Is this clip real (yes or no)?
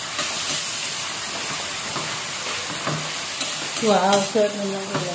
yes